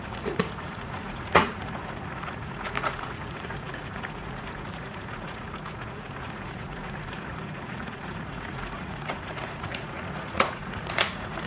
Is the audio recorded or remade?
remade